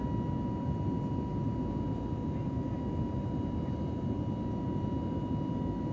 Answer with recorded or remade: recorded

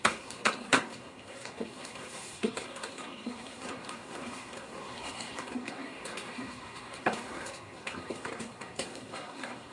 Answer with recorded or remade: remade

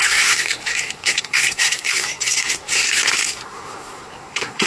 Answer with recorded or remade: remade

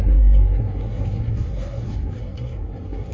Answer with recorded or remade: remade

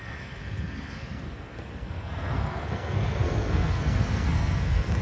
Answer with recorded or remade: remade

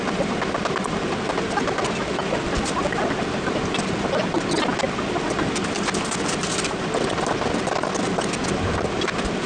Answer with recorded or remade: recorded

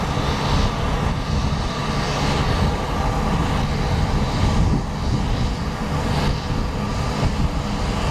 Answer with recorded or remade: recorded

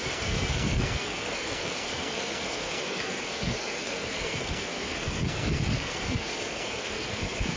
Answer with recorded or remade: remade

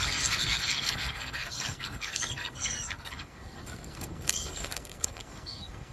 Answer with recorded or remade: remade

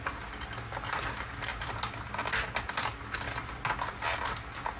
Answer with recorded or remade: recorded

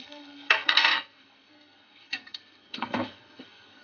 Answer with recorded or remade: remade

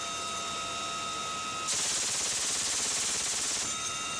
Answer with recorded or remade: recorded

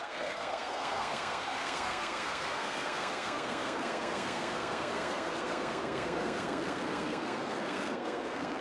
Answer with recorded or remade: remade